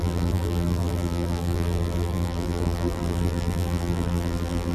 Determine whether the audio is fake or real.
fake